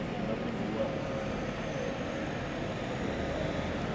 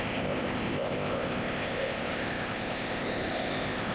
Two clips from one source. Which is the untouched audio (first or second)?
first